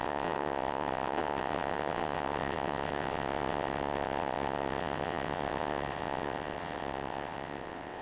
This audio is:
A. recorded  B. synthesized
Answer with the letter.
B